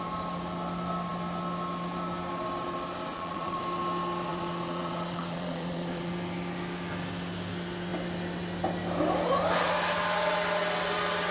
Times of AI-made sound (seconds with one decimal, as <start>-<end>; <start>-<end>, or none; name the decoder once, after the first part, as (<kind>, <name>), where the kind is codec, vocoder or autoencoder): 3.1-3.6 (vocoder, Vocos); 4.3-6.1